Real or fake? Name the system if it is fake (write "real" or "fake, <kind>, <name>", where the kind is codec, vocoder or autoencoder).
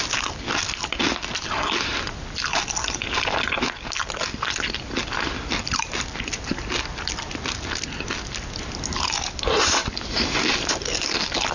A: real